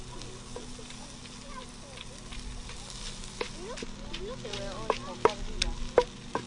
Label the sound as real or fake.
real